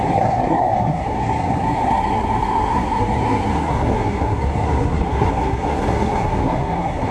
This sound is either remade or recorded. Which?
remade